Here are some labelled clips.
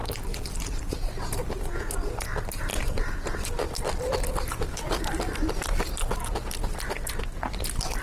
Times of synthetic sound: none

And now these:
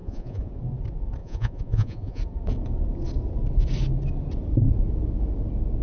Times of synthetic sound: 0.0-0.5 (vocoder, Vocos); 1.2-2.2

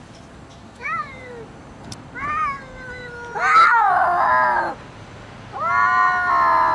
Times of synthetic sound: 0.5-1.1 (autoencoder, DAC-VAE)

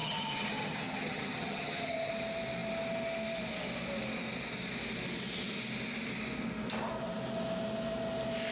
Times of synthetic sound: 0.0-2.1 (vocoder, HiFi-GAN)

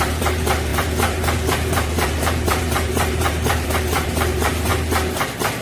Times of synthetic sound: 0.0-4.7 (vocoder, BigVGAN v2)

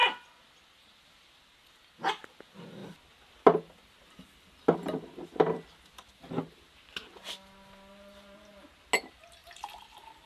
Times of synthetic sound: 9.4-10.3 (vocoder, BigVGAN v2)

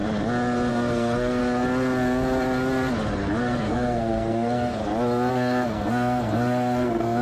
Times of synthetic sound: 0.7-1.4 (codec, SNAC); 3.4-4.8; 5.3-7.2

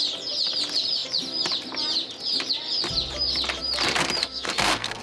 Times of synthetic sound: 4.2-5.0 (codec, SNAC)